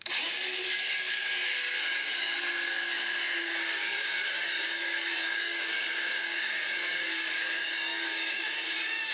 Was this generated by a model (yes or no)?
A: yes